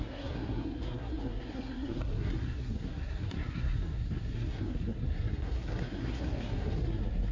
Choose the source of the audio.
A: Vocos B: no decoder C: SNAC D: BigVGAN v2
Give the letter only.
C